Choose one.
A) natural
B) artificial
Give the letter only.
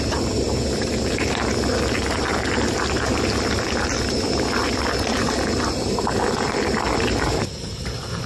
A